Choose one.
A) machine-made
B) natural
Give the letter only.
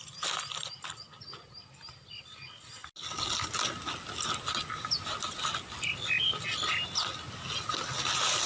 B